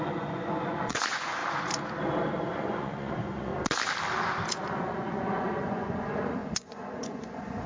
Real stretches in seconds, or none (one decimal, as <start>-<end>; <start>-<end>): 1.4-2.5; 3.5-4.5